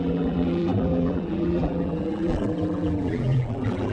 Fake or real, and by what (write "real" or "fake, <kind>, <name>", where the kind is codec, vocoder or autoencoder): fake, vocoder, BigVGAN v2